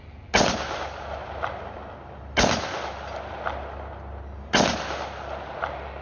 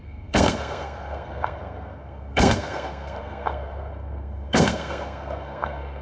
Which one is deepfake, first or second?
second